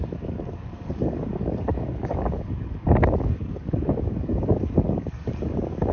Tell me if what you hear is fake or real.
fake